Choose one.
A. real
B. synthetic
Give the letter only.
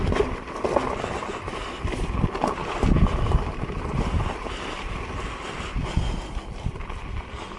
A